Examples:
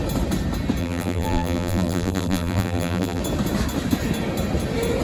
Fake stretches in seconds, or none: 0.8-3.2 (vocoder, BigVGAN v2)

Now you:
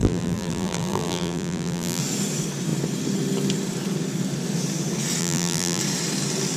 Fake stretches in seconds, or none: 0.0-2.0 (vocoder, BigVGAN v2); 5.2-5.8

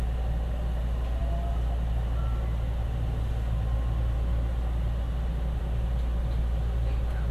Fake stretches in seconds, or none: none

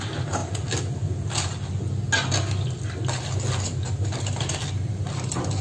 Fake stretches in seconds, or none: none

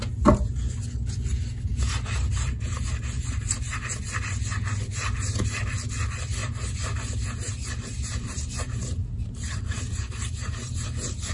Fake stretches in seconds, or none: 1.7-3.4 (vocoder, BigVGAN v2); 6.4-11.3